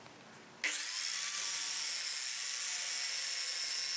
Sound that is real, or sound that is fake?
real